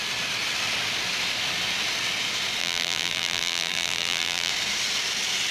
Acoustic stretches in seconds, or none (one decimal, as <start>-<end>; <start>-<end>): 0.0-2.6; 4.5-5.5

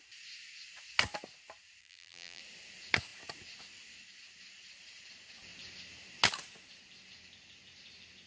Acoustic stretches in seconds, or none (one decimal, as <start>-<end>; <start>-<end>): 0.0-1.8; 2.4-8.3